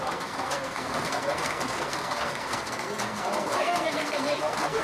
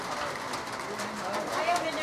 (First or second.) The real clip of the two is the second